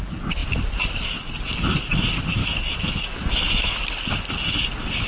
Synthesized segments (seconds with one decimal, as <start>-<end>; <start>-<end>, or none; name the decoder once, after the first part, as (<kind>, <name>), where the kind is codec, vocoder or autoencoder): 2.4-3.8 (autoencoder, DAC-VAE)